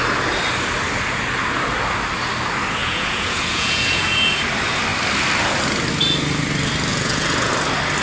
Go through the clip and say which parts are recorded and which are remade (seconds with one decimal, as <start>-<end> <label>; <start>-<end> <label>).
0.0-2.8 recorded; 2.8-4.4 remade; 4.4-6.9 recorded; 6.9-7.5 remade; 7.5-8.0 recorded